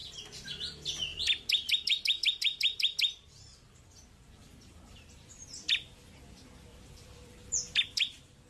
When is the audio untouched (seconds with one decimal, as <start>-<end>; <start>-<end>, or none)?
0.5-1.1; 5.3-6.7

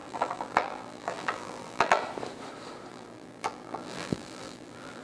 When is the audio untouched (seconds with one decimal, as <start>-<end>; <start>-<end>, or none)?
2.0-2.9

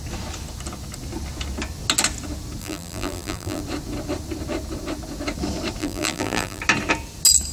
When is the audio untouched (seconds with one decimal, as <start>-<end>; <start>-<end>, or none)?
0.0-2.6; 3.6-5.8; 6.6-7.5

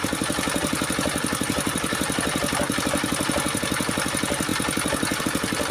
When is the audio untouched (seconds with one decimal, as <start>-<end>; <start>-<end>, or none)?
4.5-5.2

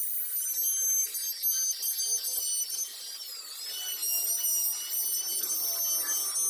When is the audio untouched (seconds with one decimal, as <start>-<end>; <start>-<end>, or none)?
0.0-6.5